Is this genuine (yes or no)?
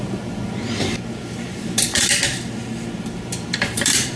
no